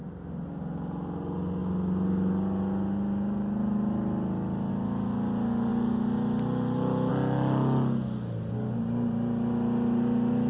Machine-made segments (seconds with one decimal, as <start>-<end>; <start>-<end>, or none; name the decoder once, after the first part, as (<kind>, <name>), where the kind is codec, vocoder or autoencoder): none